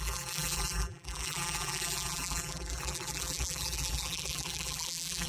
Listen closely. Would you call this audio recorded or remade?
remade